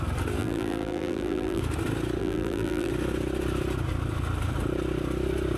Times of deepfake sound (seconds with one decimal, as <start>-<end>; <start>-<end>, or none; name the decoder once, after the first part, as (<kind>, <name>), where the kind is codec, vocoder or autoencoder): 0.4-1.6 (vocoder, BigVGAN v2); 2.2-2.9